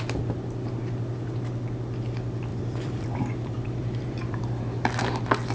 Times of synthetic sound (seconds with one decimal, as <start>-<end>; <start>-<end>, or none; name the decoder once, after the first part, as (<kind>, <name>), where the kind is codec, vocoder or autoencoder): 2.5-4.6 (vocoder, BigVGAN v2)